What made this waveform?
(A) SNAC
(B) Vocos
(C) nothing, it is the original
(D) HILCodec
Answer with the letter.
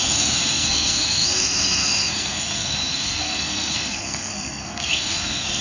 A